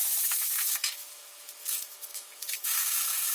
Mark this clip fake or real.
fake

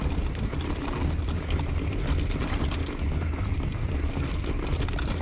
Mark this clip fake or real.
real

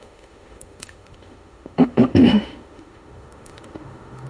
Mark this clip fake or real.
fake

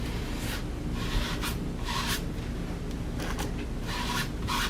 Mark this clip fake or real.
real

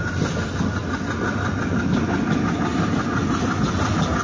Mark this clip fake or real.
real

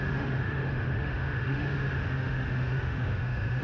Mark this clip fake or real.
fake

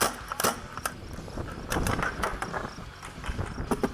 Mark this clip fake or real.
real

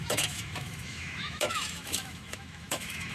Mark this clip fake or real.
fake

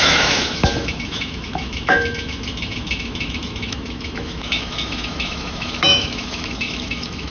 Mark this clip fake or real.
fake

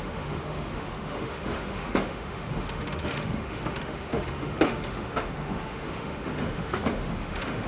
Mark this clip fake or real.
fake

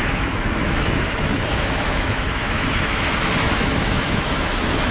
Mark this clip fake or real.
fake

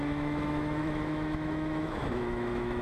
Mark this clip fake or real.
fake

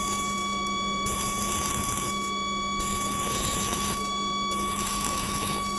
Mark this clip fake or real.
fake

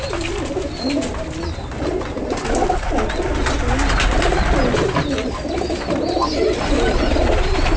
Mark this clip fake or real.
real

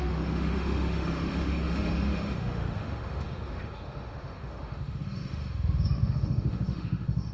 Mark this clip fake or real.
fake